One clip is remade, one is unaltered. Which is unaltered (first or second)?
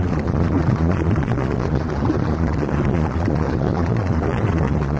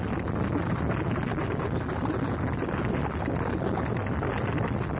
second